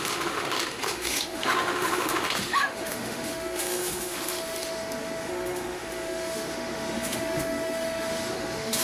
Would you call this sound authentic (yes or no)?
no